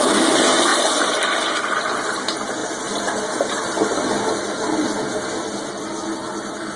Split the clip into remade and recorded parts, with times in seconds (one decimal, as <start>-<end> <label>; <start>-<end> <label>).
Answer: 0.0-0.7 recorded; 0.7-1.8 remade; 1.8-2.6 recorded; 2.6-4.5 remade; 4.5-6.8 recorded